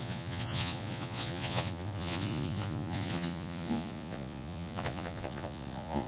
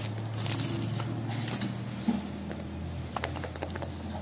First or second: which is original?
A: second